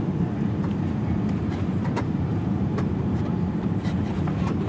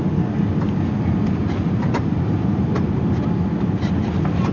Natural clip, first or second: second